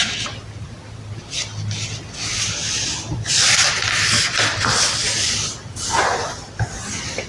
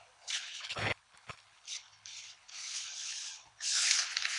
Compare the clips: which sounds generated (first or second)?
second